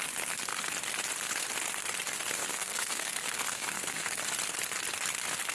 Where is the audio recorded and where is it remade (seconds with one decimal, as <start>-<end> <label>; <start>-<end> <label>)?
0.0-2.4 recorded; 2.4-4.2 remade; 4.2-5.5 recorded